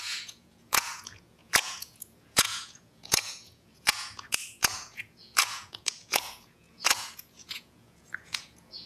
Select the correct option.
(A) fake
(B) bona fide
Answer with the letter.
A